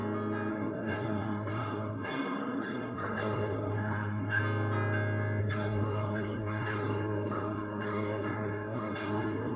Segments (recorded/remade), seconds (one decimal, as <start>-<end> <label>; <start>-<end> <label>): 0.0-0.5 recorded; 0.5-4.4 remade; 4.4-5.4 recorded; 5.4-9.6 remade